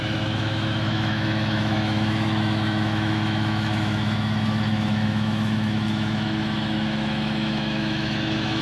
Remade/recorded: remade